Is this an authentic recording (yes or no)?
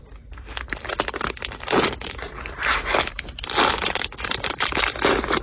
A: yes